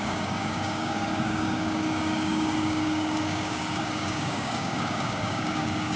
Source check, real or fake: fake